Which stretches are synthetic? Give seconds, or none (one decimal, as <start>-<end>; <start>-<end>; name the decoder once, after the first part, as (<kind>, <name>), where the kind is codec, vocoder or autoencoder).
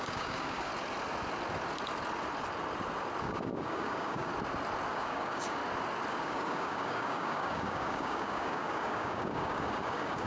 0.0-0.7 (codec, DAC); 3.2-4.3; 4.9-5.6; 6.1-10.3